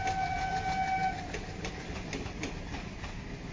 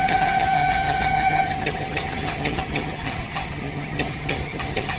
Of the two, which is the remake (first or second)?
second